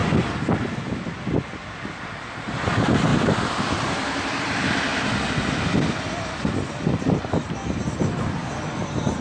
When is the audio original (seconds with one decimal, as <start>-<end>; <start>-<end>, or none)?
none